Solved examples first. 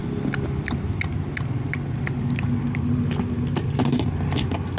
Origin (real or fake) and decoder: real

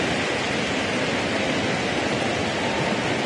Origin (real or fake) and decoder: real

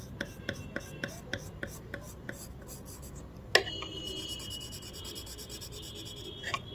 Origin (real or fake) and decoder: real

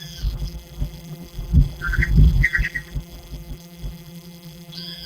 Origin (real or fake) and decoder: fake, vocoder, BigVGAN v2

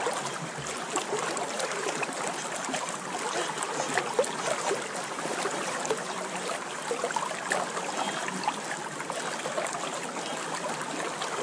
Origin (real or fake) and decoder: real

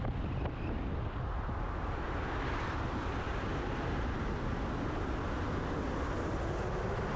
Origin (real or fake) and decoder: real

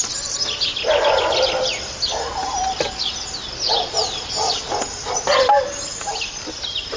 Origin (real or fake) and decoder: real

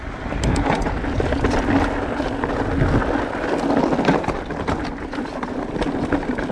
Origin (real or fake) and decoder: real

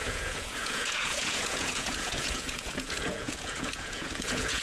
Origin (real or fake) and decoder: fake, vocoder, Vocos